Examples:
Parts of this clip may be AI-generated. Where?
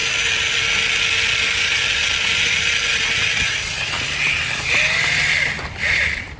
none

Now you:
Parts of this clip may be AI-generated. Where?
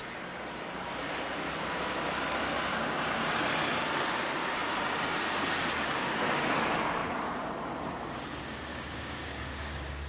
2.7-3.4 (codec, DAC); 8.7-10.1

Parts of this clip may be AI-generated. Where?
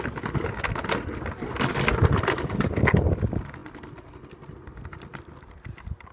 none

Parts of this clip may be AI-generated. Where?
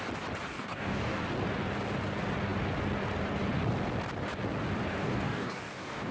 0.5-1.2 (codec, DAC); 5.0-6.1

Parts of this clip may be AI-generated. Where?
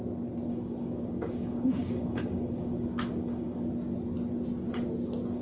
0.5-3.7 (codec, DAC)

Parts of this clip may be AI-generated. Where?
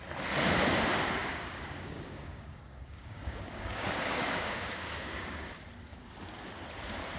1.2-5.5 (codec, DAC); 5.9-6.5